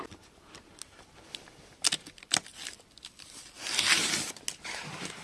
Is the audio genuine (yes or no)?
yes